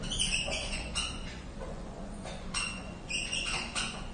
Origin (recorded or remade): remade